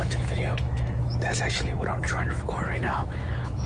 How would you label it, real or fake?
fake